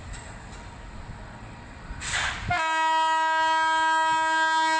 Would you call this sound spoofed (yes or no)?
no